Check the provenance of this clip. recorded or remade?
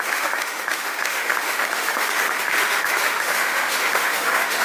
remade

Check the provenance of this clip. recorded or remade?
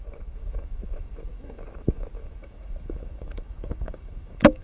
remade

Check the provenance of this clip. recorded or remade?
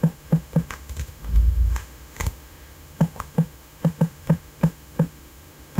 remade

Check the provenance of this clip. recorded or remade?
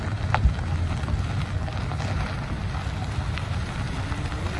recorded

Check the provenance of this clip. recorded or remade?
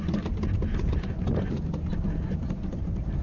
recorded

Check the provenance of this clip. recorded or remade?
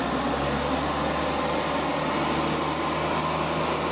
recorded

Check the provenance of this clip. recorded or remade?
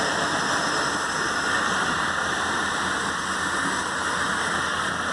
recorded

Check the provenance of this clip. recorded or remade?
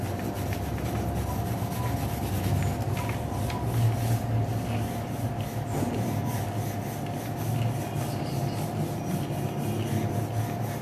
recorded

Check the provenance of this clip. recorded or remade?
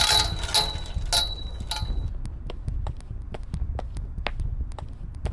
recorded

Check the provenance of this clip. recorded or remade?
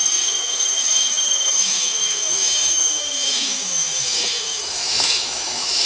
remade